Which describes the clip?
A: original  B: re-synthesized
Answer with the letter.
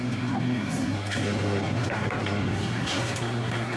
B